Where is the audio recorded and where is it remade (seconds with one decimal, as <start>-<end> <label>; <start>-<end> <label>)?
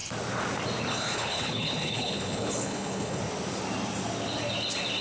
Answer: 0.0-0.9 recorded; 0.9-3.2 remade; 3.2-5.0 recorded